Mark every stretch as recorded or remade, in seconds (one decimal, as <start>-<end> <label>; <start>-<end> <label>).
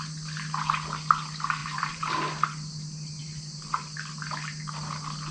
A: 0.0-1.6 recorded; 1.6-2.1 remade; 2.1-5.3 recorded